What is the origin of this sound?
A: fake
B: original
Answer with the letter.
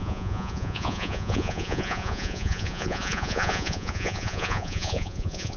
A